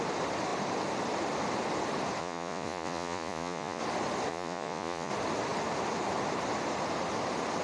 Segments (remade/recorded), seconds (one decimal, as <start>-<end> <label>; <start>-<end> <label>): 0.0-2.2 recorded; 2.2-3.8 remade; 3.8-4.3 recorded; 4.3-5.1 remade; 5.1-7.6 recorded